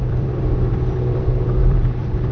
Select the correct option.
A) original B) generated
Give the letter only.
B